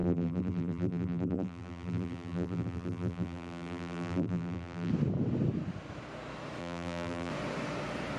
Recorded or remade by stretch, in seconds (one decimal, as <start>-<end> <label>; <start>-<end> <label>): 0.0-4.9 remade; 4.9-6.6 recorded; 6.6-7.3 remade; 7.3-8.2 recorded